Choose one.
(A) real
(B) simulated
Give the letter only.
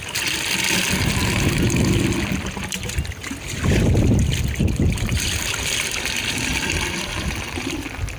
A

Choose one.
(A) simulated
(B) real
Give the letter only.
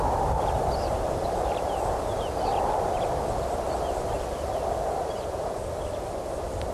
A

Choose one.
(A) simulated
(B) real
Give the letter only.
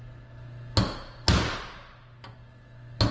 B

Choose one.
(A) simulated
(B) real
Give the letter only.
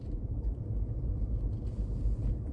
A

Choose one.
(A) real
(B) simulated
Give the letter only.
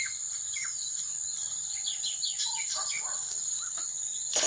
A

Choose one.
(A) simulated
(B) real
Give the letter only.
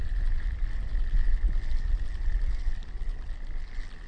B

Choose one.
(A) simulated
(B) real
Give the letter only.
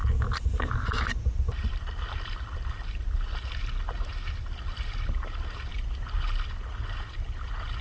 B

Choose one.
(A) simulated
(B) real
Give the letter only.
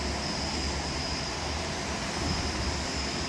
A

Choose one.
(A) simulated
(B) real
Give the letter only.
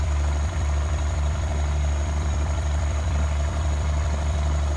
A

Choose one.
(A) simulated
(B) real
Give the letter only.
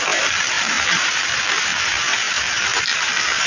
A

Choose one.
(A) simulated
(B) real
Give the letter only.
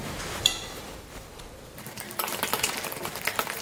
A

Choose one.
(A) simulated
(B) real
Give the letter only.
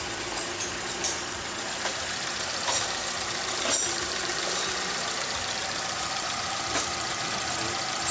A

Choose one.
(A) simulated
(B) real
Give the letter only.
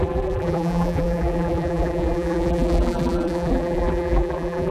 A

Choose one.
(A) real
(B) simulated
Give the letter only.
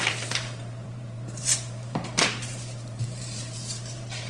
B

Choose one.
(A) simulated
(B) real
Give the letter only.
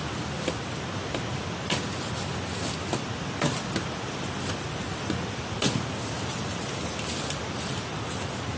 B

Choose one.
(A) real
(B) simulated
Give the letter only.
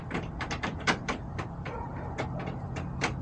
B